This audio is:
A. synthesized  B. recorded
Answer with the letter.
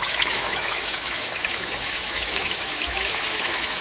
A